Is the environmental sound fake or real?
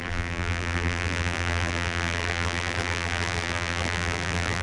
fake